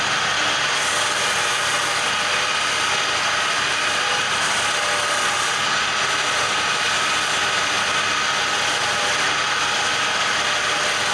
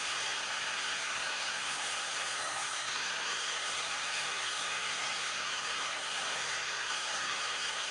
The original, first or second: first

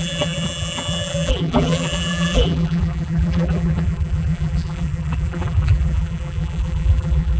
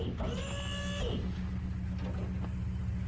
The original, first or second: second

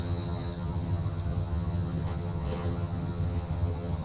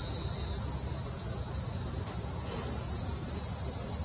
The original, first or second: second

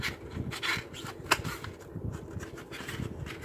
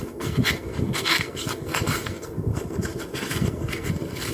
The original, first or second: first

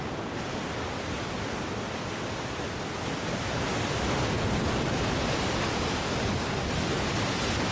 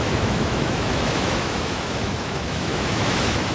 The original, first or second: first